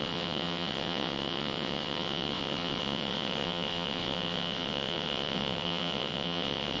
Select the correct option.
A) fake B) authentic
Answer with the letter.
A